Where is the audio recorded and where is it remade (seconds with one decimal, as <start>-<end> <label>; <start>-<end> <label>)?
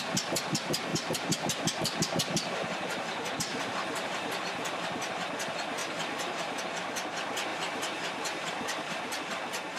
0.0-0.9 recorded; 0.9-4.4 remade; 4.4-5.8 recorded; 5.8-6.6 remade; 6.6-7.5 recorded; 7.5-9.2 remade; 9.2-9.8 recorded